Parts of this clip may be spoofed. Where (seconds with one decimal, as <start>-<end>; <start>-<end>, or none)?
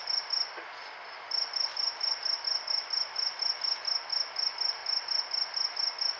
none